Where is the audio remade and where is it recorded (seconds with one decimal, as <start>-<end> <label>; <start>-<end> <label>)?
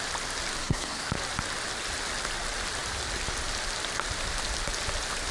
0.0-0.6 recorded; 0.6-1.1 remade; 1.1-5.3 recorded